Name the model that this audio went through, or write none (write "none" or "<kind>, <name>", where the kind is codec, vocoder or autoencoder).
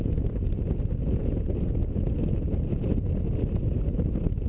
none